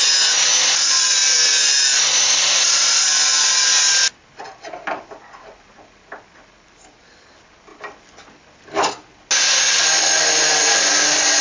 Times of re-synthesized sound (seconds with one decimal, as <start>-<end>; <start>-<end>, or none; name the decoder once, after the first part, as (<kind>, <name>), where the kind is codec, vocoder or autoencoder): none